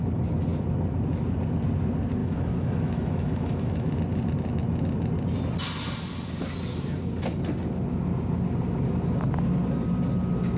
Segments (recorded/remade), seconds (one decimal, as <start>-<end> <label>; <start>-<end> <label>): 0.0-2.2 recorded; 2.2-3.9 remade; 3.9-10.6 recorded